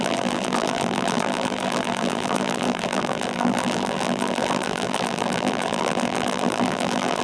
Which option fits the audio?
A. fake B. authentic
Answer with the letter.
A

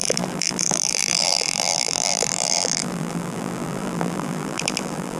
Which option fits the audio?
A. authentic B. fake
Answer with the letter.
B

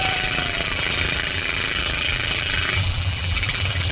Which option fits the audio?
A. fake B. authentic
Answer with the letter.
A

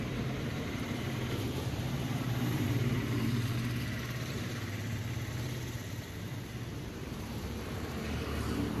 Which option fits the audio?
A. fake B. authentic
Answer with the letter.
A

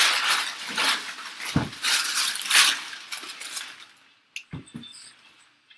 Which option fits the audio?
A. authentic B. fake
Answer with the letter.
A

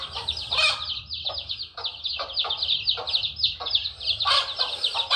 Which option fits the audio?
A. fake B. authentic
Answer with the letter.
B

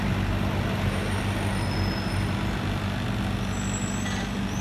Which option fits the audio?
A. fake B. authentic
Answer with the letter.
B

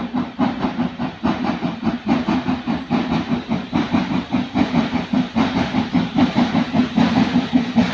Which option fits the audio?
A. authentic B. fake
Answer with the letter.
B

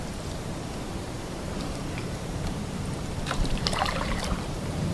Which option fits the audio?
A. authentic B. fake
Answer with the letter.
B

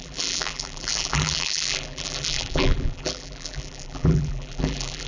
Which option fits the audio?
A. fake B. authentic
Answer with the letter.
A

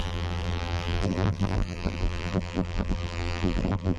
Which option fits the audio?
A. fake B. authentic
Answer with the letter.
A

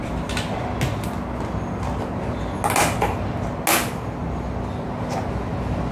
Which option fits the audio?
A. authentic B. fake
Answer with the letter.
A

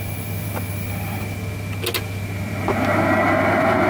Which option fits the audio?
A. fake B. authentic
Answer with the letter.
B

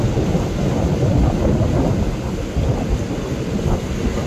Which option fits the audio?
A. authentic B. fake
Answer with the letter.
A